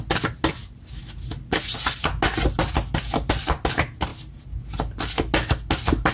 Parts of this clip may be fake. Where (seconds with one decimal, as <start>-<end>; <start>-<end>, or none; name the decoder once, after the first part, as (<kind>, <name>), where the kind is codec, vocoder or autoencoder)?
none